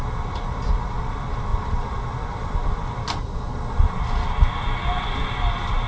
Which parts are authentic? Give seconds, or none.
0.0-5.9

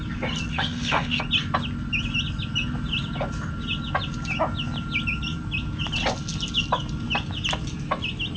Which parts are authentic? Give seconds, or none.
0.0-0.5; 1.2-8.4

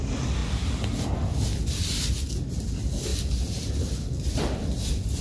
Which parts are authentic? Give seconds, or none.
0.0-5.2

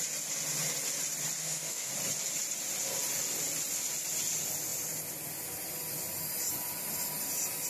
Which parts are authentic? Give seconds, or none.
0.0-1.4; 1.9-7.7

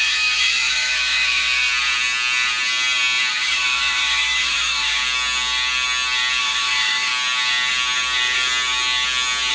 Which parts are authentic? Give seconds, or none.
1.7-3.3; 5.0-6.4; 7.1-9.5

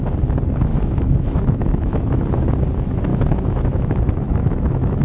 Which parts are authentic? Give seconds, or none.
0.0-0.7; 2.5-3.1

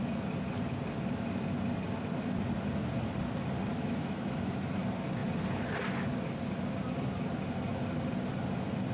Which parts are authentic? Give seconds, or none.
0.0-3.7; 4.8-8.9

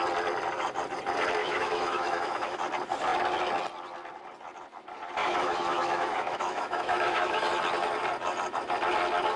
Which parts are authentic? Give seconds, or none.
0.0-1.4; 2.6-5.2; 7.4-9.4